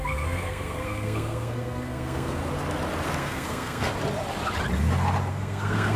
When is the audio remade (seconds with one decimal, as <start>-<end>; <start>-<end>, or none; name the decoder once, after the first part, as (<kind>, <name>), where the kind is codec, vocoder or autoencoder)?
0.0-2.4 (codec, SNAC); 3.2-3.9; 5.3-6.0